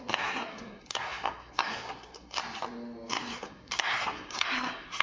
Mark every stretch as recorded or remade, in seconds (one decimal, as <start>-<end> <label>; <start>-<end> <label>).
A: 0.0-2.4 remade; 2.4-3.1 recorded; 3.1-5.0 remade